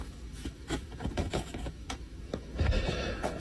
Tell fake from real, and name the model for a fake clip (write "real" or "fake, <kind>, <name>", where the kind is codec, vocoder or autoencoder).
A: fake, autoencoder, DAC-VAE